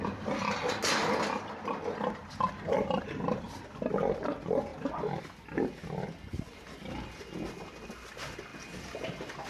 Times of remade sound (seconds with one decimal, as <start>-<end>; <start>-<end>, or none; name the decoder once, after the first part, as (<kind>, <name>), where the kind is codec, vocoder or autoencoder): 2.2-3.7 (vocoder, BigVGAN v2)